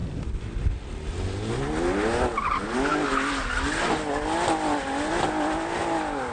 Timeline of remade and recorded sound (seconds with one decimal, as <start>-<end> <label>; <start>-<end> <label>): 0.0-6.3 recorded